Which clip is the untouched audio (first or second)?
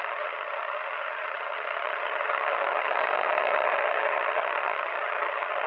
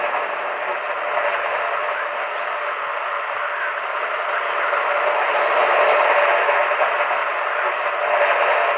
second